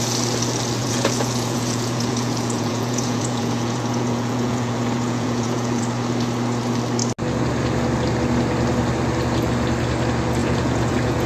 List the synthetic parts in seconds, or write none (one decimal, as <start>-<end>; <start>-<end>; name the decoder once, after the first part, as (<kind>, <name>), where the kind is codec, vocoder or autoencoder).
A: 0.8-5.8 (vocoder, Vocos); 10.4-11.3